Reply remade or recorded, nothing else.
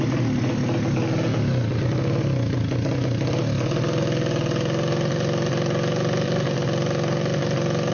recorded